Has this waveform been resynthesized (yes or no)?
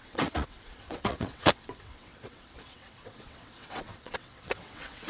yes